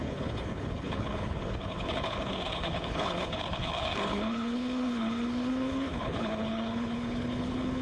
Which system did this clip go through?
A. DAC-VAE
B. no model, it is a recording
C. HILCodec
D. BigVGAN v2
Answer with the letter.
C